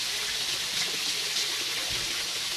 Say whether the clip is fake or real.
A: real